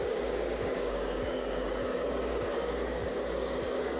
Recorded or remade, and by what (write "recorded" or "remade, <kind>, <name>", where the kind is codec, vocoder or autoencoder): remade, codec, DAC